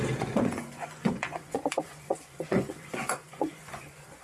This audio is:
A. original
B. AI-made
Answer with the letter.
B